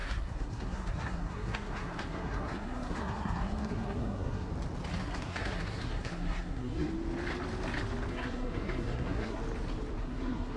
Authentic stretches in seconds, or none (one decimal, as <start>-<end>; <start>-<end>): 4.5-5.0; 6.9-8.1; 9.4-10.0

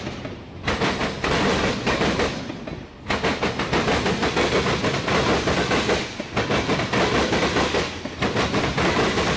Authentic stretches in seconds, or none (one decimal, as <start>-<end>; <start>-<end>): 0.0-9.4

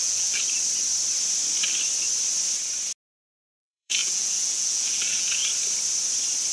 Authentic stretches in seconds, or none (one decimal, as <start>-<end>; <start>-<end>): 0.4-3.5; 5.4-6.5

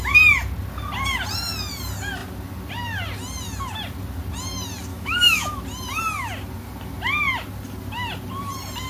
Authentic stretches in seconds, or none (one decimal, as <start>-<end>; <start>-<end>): 0.0-4.9; 5.6-8.9